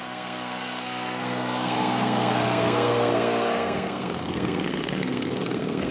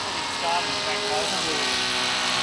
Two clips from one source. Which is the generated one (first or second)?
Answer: first